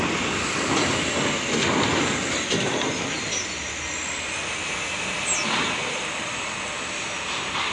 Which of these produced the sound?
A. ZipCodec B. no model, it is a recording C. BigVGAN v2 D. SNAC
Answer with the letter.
B